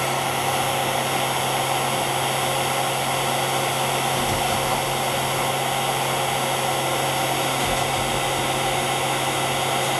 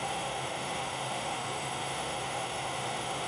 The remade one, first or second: second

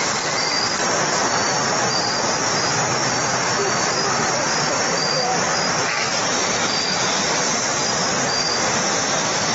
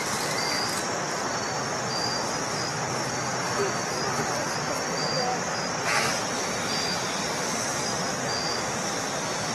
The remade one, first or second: first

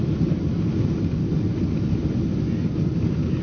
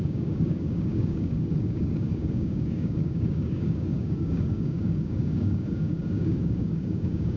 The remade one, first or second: second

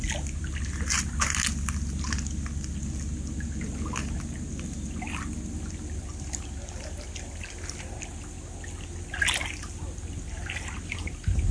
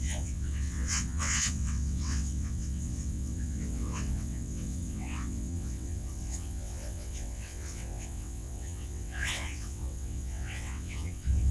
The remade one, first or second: second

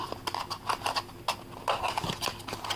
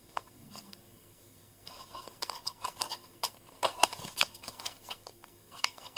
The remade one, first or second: second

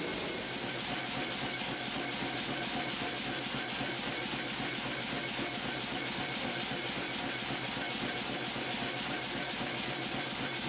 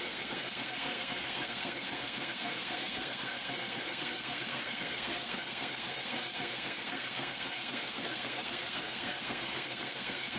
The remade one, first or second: second